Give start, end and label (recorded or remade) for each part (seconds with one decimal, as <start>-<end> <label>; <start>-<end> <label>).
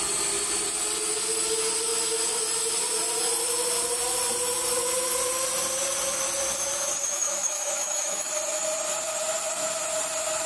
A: 0.0-7.0 recorded; 7.0-8.3 remade; 8.3-10.5 recorded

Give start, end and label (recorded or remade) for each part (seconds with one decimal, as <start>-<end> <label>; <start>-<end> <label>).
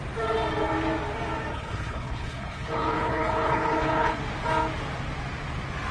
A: 0.0-1.5 recorded; 1.5-4.2 remade; 4.2-5.9 recorded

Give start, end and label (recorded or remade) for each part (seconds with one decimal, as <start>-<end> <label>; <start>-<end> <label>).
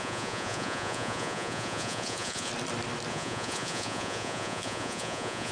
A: 0.0-2.5 remade; 2.5-3.1 recorded; 3.1-5.5 remade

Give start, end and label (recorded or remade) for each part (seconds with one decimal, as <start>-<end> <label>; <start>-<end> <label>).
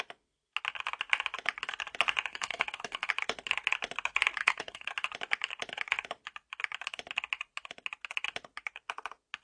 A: 0.0-2.3 recorded; 2.3-3.1 remade; 3.1-4.4 recorded; 4.4-4.9 remade; 4.9-9.4 recorded